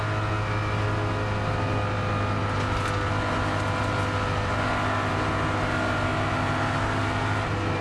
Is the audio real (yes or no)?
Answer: yes